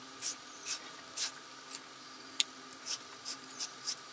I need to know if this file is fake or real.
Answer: fake